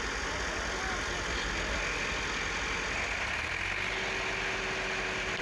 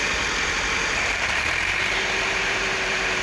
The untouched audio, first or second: first